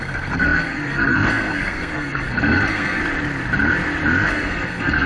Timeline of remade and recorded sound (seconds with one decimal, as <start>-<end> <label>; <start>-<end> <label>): 0.0-3.0 remade; 3.0-4.3 recorded; 4.3-5.1 remade